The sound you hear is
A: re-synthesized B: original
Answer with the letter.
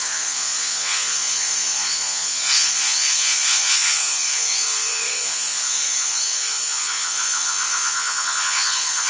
A